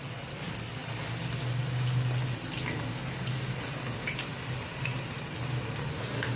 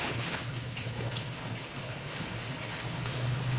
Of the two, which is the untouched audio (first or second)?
first